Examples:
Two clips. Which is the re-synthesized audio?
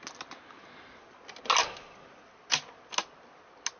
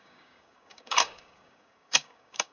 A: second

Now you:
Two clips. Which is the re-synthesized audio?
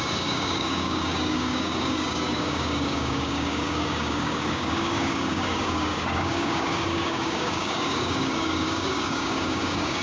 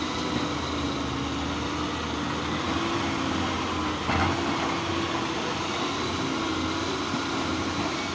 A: first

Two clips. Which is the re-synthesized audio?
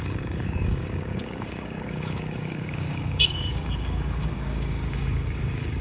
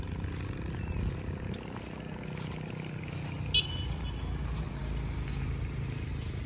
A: first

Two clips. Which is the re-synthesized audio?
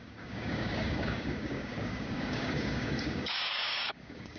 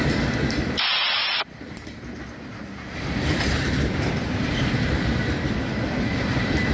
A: first